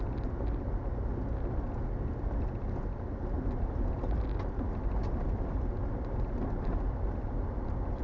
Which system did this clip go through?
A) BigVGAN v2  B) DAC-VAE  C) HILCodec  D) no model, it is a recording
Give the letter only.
D